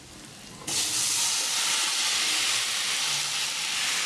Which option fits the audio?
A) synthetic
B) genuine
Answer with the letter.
B